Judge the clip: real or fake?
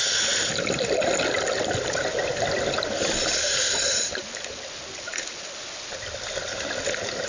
real